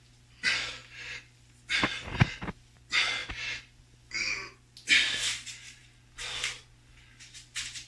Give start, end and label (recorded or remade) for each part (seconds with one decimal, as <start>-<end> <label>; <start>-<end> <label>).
0.0-7.9 recorded